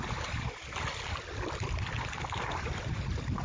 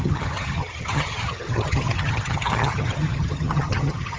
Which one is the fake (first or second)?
second